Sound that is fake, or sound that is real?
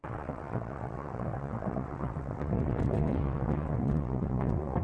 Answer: fake